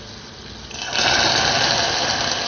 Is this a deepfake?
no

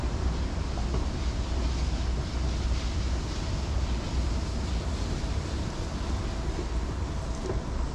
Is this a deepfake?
no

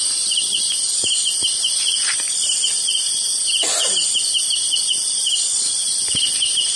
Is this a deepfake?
yes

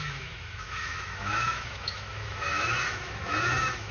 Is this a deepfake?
yes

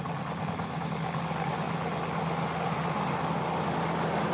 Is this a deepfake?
no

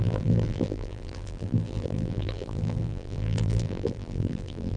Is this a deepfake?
yes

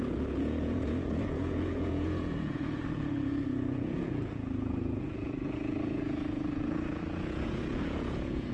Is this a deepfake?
yes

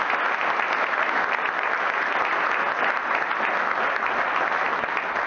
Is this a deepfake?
no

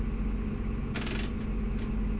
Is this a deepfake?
no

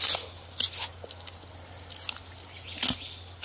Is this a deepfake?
no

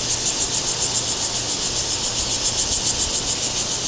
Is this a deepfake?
no